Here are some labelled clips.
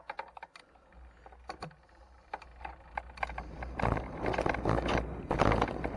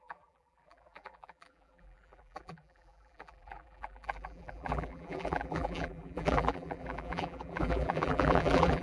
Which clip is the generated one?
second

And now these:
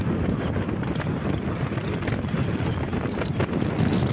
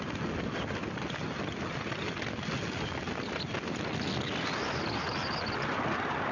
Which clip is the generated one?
first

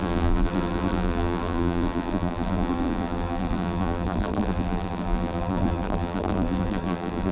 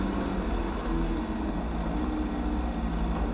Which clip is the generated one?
first